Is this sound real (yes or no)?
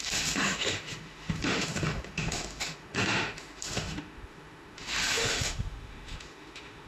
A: no